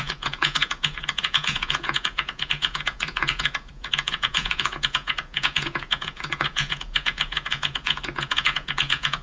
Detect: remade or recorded remade